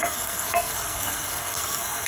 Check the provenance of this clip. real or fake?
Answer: fake